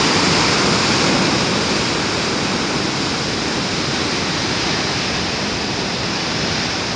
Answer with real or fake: real